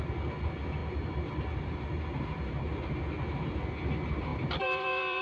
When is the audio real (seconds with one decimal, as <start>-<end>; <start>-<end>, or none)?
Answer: 0.0-0.8; 1.8-4.3